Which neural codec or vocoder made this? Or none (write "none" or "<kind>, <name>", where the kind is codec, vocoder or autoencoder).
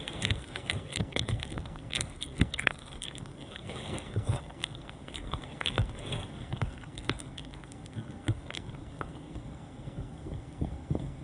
codec, SNAC